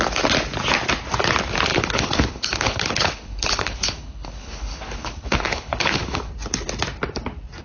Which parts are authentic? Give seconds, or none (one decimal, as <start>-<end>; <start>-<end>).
0.0-1.7; 6.3-7.6